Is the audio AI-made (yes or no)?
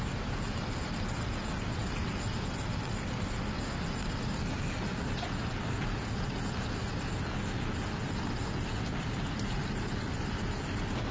no